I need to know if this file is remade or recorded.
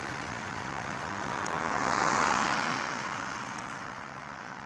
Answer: remade